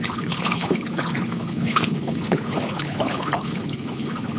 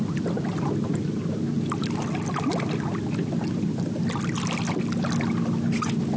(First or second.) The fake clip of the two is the first